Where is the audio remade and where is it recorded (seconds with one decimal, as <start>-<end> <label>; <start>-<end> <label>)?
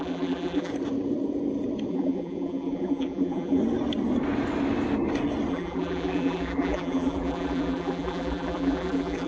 0.0-0.7 remade; 0.7-1.9 recorded; 1.9-3.6 remade; 3.6-5.5 recorded; 5.5-9.3 remade